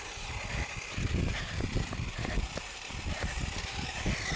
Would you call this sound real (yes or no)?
yes